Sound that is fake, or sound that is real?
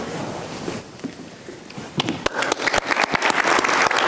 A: real